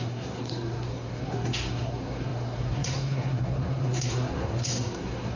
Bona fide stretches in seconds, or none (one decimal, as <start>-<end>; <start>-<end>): none